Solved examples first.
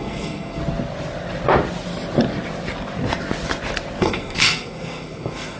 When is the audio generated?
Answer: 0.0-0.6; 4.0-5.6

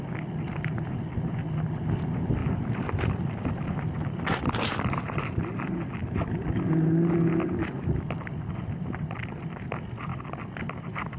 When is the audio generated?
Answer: none

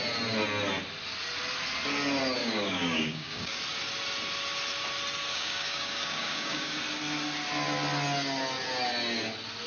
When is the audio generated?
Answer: 2.4-3.6; 5.3-6.8